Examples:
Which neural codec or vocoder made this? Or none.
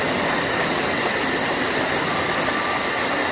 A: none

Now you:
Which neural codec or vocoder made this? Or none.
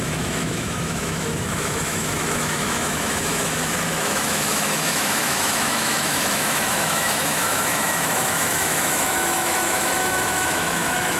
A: autoencoder, DAC-VAE